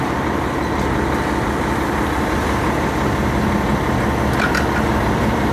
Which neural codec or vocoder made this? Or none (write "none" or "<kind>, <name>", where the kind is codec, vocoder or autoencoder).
none